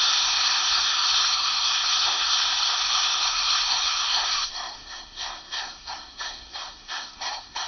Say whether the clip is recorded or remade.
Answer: remade